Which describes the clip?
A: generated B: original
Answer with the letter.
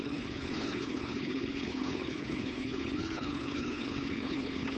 A